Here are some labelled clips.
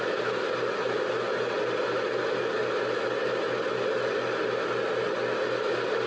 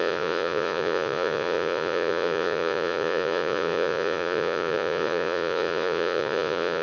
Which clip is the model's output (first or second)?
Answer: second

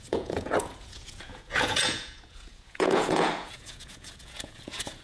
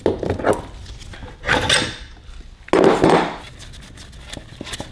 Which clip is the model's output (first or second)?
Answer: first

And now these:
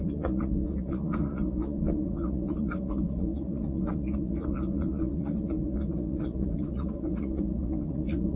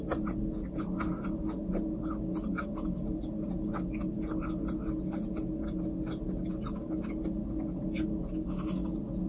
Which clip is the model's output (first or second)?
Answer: first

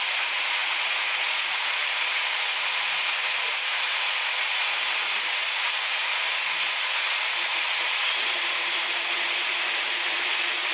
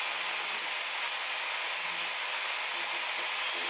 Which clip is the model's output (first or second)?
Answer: first